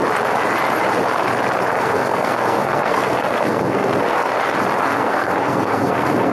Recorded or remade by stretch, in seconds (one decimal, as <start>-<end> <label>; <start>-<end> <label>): 0.0-1.8 recorded; 1.8-4.3 remade; 4.3-4.8 recorded; 4.8-6.3 remade